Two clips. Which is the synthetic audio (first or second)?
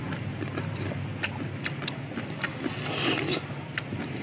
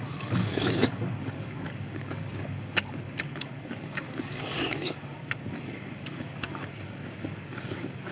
second